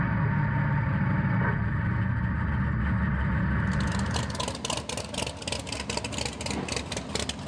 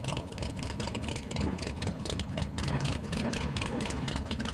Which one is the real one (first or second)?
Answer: first